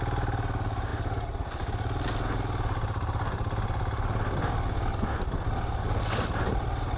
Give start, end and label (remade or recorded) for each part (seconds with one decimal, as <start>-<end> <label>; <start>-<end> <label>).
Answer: 0.0-7.0 recorded